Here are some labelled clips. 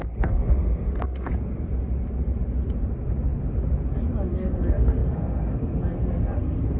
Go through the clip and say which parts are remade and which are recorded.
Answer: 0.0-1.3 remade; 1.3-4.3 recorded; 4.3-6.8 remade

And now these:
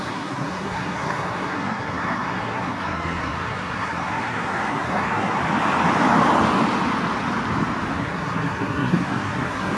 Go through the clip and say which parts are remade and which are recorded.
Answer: 0.0-5.4 remade; 5.4-8.0 recorded; 8.0-9.8 remade

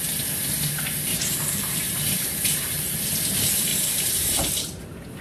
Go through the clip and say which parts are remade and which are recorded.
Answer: 0.0-1.1 recorded; 1.1-3.0 remade; 3.0-3.7 recorded; 3.7-4.5 remade; 4.5-5.2 recorded

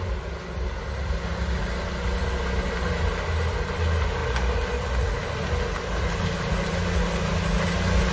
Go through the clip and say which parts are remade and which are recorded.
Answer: 0.0-8.1 recorded

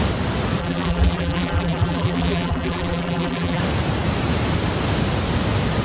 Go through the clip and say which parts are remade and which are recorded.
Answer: 0.0-0.6 recorded; 0.6-3.6 remade; 3.6-5.8 recorded

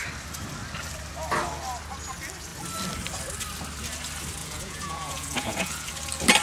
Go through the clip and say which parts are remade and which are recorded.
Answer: 0.0-4.4 recorded; 4.4-5.9 remade; 5.9-6.4 recorded